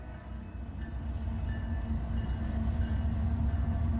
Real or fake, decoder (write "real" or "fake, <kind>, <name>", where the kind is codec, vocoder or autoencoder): real